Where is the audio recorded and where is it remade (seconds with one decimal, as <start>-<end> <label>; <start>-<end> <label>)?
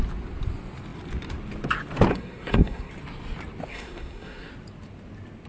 0.0-2.1 recorded; 2.1-2.9 remade; 2.9-3.7 recorded; 3.7-4.5 remade; 4.5-5.5 recorded